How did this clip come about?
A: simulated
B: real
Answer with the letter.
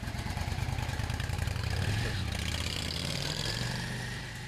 A